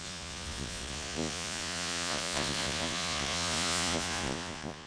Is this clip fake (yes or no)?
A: yes